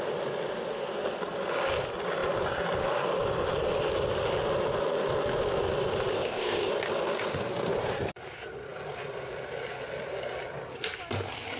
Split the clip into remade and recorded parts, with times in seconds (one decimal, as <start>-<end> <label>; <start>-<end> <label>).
0.0-6.1 recorded; 6.1-6.7 remade; 6.7-11.6 recorded